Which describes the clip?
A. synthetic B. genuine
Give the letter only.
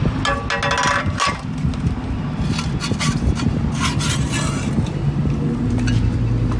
B